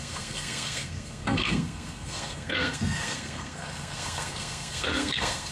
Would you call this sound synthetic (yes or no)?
yes